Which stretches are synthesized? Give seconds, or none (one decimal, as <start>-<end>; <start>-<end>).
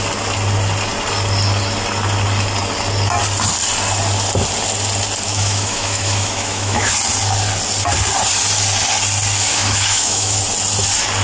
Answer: 5.3-6.9; 9.4-10.4